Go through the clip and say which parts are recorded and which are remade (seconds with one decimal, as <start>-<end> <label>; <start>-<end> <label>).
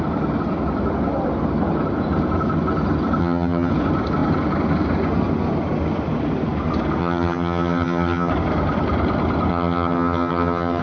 0.0-3.2 recorded; 3.2-3.7 remade; 3.7-7.0 recorded; 7.0-8.3 remade; 8.3-9.5 recorded; 9.5-10.8 remade